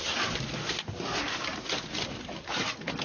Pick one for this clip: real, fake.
real